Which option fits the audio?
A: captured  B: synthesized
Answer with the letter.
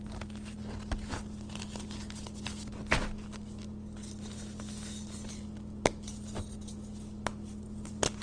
A